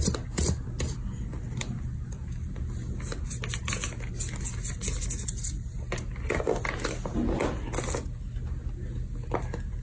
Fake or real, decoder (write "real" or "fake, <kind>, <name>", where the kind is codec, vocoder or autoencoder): real